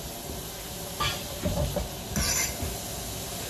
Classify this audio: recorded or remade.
recorded